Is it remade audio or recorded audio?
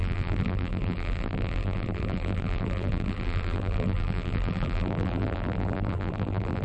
remade